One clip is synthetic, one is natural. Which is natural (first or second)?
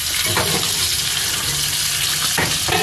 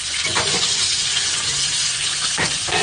first